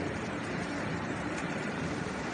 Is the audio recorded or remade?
remade